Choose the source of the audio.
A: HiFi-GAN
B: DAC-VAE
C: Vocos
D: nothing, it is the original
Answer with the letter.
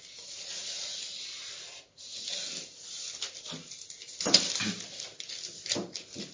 D